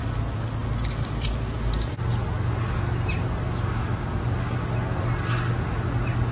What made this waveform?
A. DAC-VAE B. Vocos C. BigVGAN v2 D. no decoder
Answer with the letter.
D